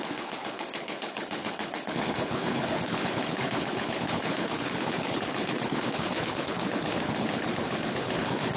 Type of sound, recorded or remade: remade